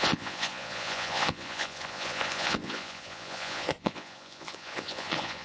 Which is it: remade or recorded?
remade